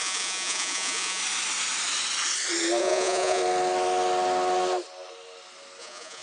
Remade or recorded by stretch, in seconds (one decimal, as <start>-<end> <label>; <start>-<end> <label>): 0.0-1.2 remade; 1.2-2.8 recorded; 2.8-3.4 remade; 3.4-5.8 recorded; 5.8-6.2 remade

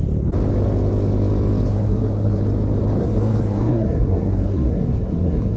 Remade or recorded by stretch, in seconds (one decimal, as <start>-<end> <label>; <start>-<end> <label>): 0.0-1.7 recorded; 1.7-2.4 remade; 2.4-3.0 recorded; 3.0-5.6 remade

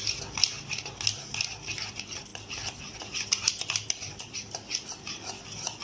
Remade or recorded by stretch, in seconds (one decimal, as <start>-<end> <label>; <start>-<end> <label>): 0.0-5.8 recorded

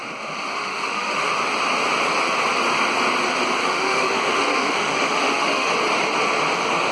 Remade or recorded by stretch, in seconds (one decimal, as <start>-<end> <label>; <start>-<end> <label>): 0.0-1.3 remade; 1.3-3.6 recorded; 3.6-5.7 remade; 5.7-6.9 recorded

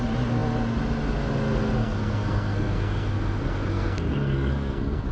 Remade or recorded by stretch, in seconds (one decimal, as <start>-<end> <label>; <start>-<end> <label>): 0.0-1.8 recorded; 1.8-5.1 remade